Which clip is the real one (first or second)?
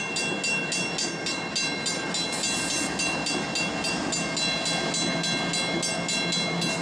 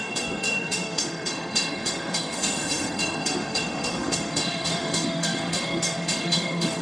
first